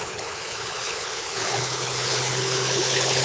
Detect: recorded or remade remade